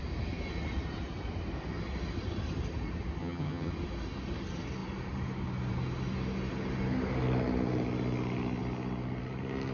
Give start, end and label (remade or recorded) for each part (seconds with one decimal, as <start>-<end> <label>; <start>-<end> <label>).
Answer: 0.0-3.2 recorded; 3.2-3.7 remade; 3.7-9.7 recorded